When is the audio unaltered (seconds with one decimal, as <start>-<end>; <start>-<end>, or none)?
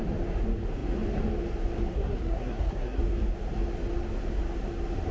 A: 0.0-1.9; 3.0-5.1